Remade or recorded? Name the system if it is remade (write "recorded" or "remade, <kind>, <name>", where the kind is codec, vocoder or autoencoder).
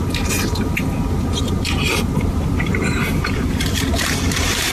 remade, vocoder, BigVGAN v2